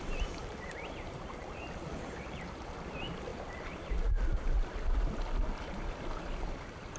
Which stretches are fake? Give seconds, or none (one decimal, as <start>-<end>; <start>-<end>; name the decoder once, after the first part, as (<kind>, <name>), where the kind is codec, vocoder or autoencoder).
0.0-3.3 (vocoder, BigVGAN v2); 5.9-7.0